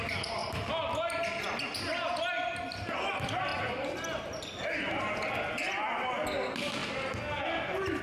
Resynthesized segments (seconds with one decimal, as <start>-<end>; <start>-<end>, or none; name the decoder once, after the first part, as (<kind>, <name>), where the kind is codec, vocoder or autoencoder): none